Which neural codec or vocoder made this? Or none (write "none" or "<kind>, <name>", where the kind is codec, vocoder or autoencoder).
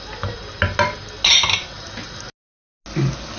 none